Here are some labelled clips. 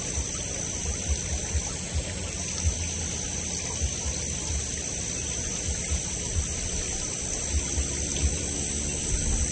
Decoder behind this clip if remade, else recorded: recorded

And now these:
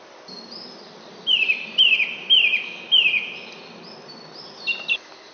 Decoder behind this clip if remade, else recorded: recorded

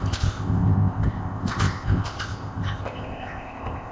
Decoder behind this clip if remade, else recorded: remade, codec, ZipCodec